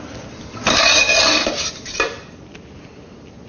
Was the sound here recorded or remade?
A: recorded